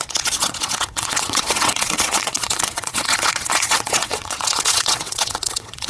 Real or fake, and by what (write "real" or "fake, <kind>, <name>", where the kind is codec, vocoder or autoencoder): fake, vocoder, WaveNeXt